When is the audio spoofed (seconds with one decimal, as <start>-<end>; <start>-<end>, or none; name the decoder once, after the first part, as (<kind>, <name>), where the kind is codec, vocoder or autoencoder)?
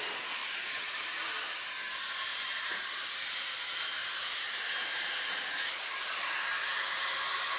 0.4-1.7 (vocoder, BigVGAN v2); 4.0-5.7